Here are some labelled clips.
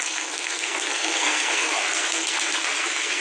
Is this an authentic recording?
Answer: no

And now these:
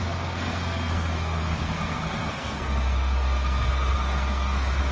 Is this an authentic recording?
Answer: no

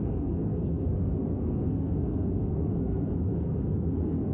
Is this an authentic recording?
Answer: no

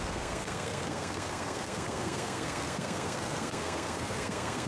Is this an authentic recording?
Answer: no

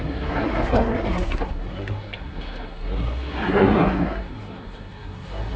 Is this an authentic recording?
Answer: no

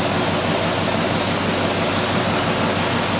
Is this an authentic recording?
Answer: yes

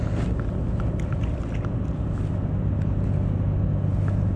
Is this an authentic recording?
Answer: yes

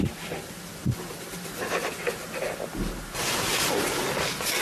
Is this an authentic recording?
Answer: yes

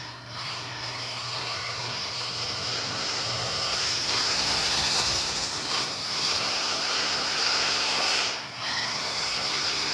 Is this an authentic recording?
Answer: no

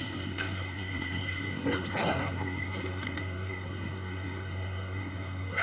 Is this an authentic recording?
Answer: no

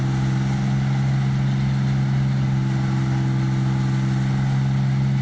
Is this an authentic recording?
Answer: yes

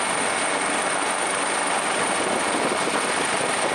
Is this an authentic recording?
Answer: yes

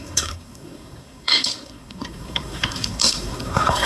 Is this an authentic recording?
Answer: no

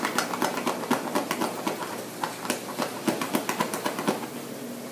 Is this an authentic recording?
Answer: yes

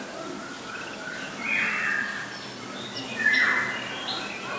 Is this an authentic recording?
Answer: yes